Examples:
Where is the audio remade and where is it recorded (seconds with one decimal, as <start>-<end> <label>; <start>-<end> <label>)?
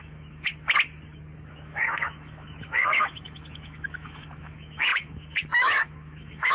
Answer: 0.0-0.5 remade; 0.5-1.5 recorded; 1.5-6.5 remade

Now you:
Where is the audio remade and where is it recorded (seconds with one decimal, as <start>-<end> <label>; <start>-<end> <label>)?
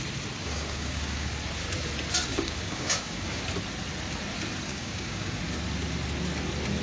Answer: 0.0-0.4 recorded; 0.4-1.3 remade; 1.3-2.3 recorded; 2.3-3.4 remade; 3.4-4.7 recorded; 4.7-5.4 remade; 5.4-6.8 recorded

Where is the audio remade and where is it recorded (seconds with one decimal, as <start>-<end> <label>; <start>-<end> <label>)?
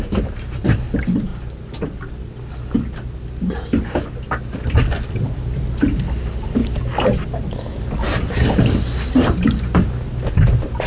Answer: 0.0-10.9 recorded